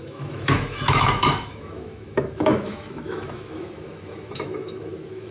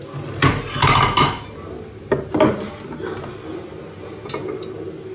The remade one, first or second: first